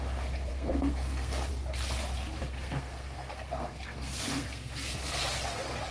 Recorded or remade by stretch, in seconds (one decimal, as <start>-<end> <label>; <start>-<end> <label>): 0.0-0.5 recorded; 0.5-1.5 remade; 1.5-2.4 recorded; 2.4-5.2 remade; 5.2-5.9 recorded